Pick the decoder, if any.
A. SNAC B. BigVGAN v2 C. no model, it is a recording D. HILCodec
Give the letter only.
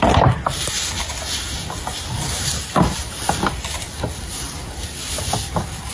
B